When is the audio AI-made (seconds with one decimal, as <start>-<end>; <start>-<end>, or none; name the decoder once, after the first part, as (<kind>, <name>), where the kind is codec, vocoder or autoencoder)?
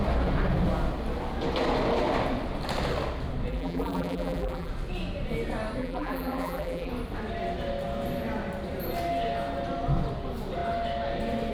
3.5-4.7 (vocoder, BigVGAN v2); 5.8-6.9